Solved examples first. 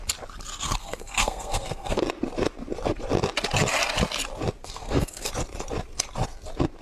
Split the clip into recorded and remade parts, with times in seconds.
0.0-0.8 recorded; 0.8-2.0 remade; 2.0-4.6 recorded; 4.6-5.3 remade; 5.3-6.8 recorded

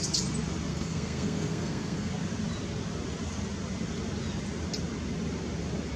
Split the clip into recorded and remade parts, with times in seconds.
0.0-0.7 recorded; 0.7-2.1 remade; 2.1-6.0 recorded

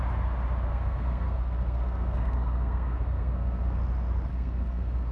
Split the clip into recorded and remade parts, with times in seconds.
0.0-0.7 recorded; 0.7-3.8 remade; 3.8-4.3 recorded; 4.3-5.1 remade

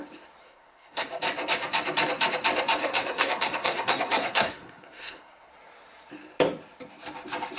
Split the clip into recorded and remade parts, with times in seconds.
0.0-0.4 recorded; 0.4-1.1 remade; 1.1-2.8 recorded; 2.8-5.5 remade; 5.5-7.6 recorded

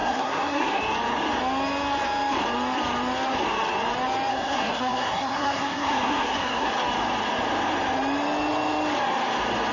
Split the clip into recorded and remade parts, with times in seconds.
0.0-0.8 remade; 0.8-4.3 recorded; 4.3-6.7 remade; 6.7-9.7 recorded